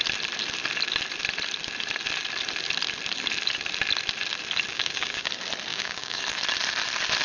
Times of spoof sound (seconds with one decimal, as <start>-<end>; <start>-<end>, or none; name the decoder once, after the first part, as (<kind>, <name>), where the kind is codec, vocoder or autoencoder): 4.7-5.3 (codec, DAC); 5.7-6.2